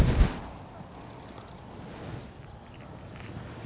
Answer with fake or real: real